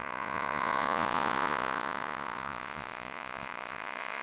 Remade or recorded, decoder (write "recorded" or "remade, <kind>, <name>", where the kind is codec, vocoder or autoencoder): remade, vocoder, Vocos